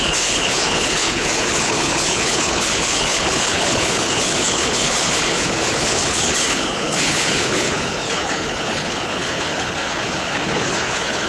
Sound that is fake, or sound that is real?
fake